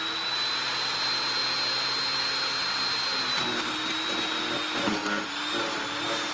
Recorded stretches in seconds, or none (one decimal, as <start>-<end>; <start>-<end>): 0.0-6.3